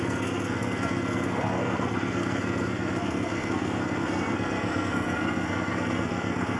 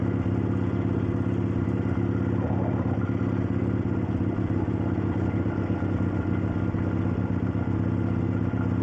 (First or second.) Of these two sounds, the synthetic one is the first